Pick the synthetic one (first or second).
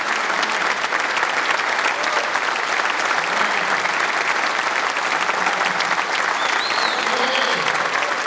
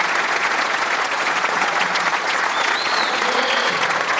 second